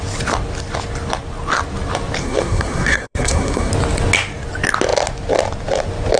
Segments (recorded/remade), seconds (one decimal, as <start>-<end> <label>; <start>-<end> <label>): 0.0-2.2 recorded; 2.2-3.7 remade; 3.7-6.2 recorded